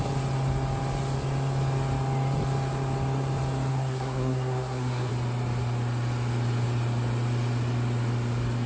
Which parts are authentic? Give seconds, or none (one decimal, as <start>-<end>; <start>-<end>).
0.0-3.7; 5.1-8.7